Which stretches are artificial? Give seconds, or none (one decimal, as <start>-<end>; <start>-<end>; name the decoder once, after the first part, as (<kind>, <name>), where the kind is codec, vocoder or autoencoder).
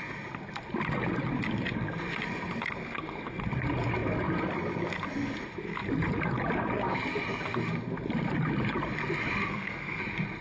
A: 2.8-3.4 (codec, SNAC); 9.5-10.0